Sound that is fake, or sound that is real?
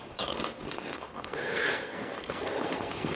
fake